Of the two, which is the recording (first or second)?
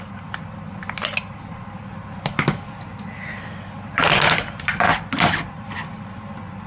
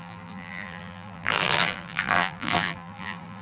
first